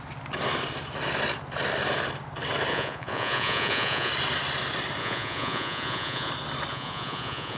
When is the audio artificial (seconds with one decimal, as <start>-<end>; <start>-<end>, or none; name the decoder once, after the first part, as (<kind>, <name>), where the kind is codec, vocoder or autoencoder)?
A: 2.7-4.1 (vocoder, Vocos); 5.0-6.3; 6.7-7.6